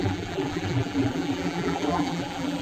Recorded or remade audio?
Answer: remade